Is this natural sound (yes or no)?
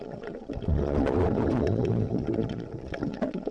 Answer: no